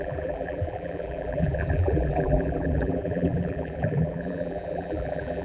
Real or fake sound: fake